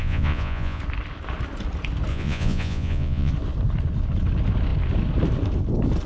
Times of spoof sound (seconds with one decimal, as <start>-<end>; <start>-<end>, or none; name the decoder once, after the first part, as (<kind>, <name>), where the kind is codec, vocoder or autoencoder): 0.0-0.8 (vocoder, Vocos); 2.1-3.3